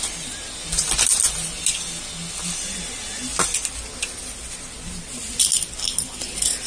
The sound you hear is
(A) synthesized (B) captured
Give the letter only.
B